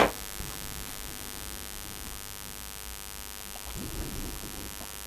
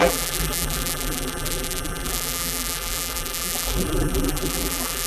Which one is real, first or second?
first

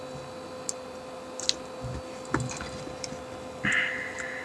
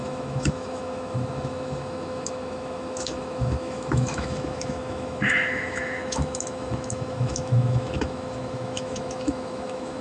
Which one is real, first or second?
first